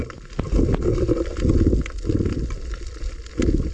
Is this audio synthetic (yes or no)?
no